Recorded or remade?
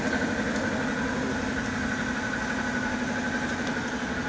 recorded